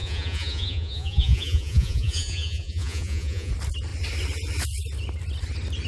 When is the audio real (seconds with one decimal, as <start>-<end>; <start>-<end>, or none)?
3.5-5.9